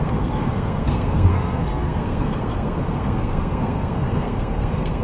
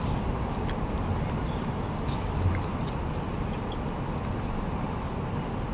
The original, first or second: second